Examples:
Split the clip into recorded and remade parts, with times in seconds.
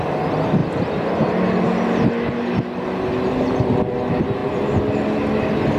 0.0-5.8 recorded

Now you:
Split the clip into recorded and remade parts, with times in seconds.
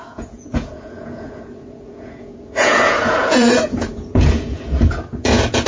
0.0-5.7 remade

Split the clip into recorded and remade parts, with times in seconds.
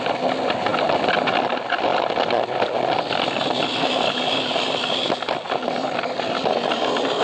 0.0-7.2 recorded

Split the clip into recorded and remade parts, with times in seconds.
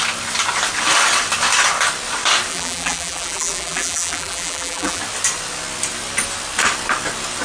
0.0-2.5 recorded; 2.5-5.0 remade; 5.0-7.4 recorded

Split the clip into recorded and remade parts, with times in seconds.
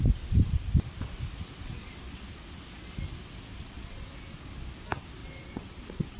0.0-1.6 recorded; 1.6-2.3 remade; 2.3-3.5 recorded; 3.5-4.1 remade; 4.1-5.2 recorded; 5.2-6.2 remade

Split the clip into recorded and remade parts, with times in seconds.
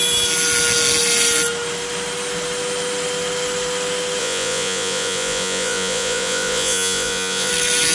0.0-4.2 recorded; 4.2-7.5 remade; 7.5-7.9 recorded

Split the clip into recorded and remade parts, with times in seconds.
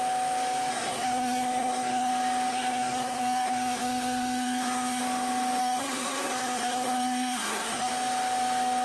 0.0-0.7 recorded; 0.7-2.1 remade; 2.1-2.5 recorded; 2.5-5.0 remade; 5.0-5.6 recorded; 5.6-7.9 remade; 7.9-8.8 recorded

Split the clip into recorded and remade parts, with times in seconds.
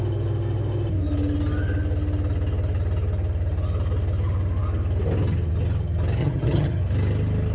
0.0-6.2 recorded; 6.2-6.8 remade; 6.8-7.5 recorded